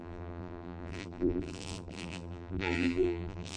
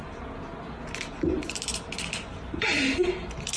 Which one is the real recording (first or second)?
second